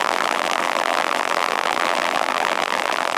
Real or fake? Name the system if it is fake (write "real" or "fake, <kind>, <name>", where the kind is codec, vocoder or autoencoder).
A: fake, vocoder, BigVGAN v2